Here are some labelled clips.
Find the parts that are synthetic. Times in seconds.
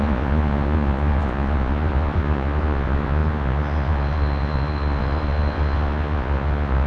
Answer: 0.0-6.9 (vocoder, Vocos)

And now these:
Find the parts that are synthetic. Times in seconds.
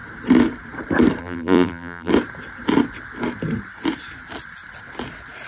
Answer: 1.2-2.1 (vocoder, BigVGAN v2)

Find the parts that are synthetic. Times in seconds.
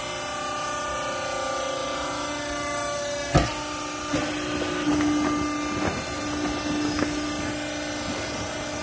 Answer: none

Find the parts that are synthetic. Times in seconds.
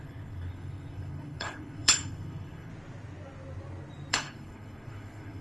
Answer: 0.0-2.7 (codec, HILCodec); 4.1-5.4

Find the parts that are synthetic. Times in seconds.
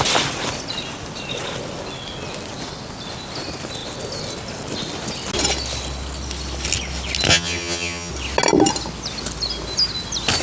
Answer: 7.3-8.1 (vocoder, HiFi-GAN)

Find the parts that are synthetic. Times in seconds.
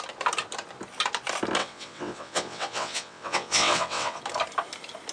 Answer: 1.6-4.2 (vocoder, WaveNeXt)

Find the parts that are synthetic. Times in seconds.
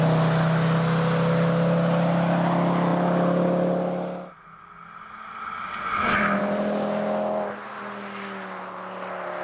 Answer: none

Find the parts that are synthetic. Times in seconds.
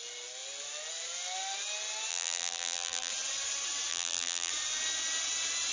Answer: 2.1-3.1 (vocoder, BigVGAN v2); 3.9-4.5